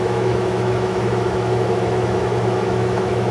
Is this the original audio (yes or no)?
no